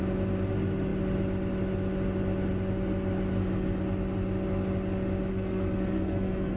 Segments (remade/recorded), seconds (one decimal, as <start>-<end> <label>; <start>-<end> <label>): 0.0-5.3 recorded; 5.3-6.6 remade